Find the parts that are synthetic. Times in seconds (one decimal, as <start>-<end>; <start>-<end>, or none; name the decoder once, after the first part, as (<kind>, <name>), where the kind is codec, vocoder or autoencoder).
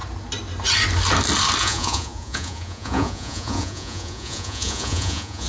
1.6-5.5 (vocoder, Vocos)